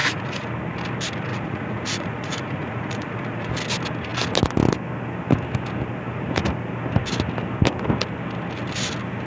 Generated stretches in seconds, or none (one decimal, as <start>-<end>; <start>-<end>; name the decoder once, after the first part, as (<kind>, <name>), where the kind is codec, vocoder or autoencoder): 0.0-0.5 (vocoder, Vocos); 1.3-3.5